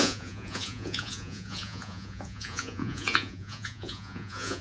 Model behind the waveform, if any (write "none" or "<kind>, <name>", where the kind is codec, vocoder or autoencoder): vocoder, Vocos